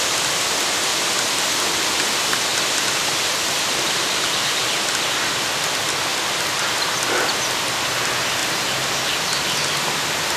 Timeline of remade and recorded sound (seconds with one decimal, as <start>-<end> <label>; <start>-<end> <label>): 0.0-0.9 recorded; 0.9-1.8 remade; 1.8-10.4 recorded